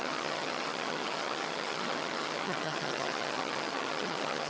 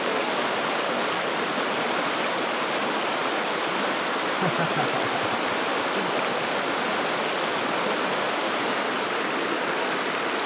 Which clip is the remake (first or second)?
first